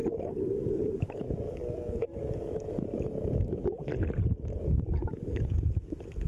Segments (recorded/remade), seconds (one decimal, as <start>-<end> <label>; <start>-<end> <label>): 0.0-3.9 remade; 3.9-4.6 recorded; 4.6-6.3 remade